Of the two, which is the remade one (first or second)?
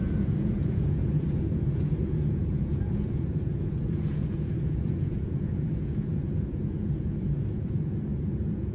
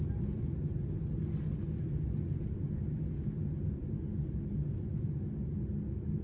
first